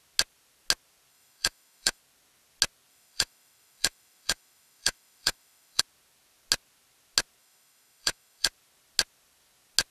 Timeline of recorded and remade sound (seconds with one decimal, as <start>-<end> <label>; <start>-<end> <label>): 0.0-1.1 recorded; 1.1-2.0 remade; 2.0-2.9 recorded; 2.9-5.8 remade; 5.8-7.4 recorded; 7.4-8.5 remade; 8.5-9.9 recorded